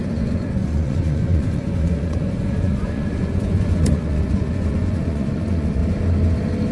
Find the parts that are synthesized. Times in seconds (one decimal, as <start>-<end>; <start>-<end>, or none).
0.0-5.8